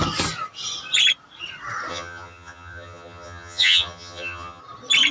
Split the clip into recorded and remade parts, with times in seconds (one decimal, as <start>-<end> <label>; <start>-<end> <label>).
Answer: 0.0-1.9 recorded; 1.9-4.6 remade; 4.6-5.1 recorded